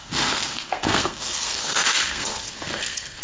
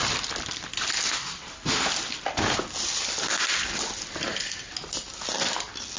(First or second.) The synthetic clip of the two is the first